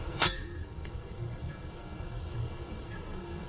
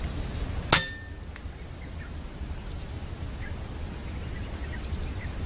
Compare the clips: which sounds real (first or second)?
second